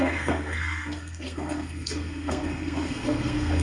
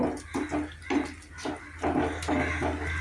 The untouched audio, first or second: second